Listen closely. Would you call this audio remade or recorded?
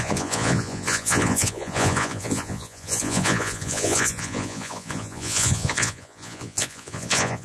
remade